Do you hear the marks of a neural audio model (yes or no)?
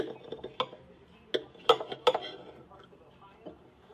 no